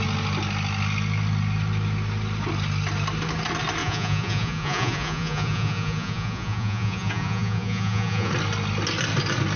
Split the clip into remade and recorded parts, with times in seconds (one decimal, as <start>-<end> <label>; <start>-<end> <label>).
0.0-3.8 recorded; 3.8-8.3 remade; 8.3-9.6 recorded